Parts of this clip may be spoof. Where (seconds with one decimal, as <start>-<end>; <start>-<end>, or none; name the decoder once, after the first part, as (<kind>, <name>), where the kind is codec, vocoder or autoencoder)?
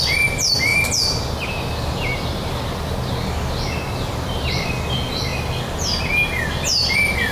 none